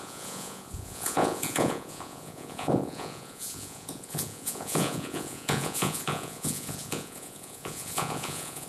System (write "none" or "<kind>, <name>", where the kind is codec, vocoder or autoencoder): vocoder, Vocos